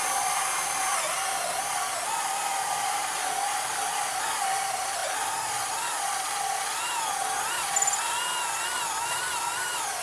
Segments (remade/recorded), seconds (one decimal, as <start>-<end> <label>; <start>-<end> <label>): 0.0-10.0 recorded